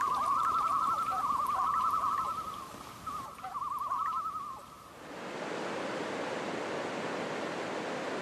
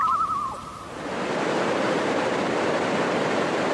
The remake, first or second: second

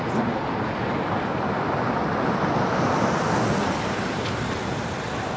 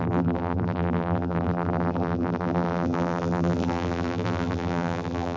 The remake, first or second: second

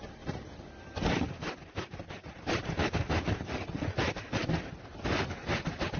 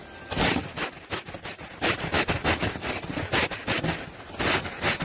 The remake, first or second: first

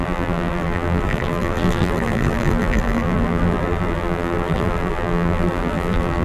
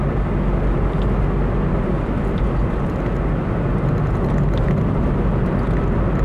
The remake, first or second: first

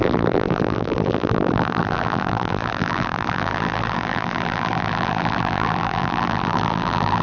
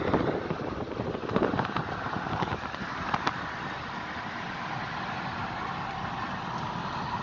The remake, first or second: first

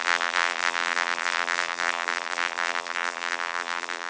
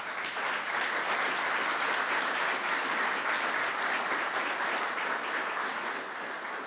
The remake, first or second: first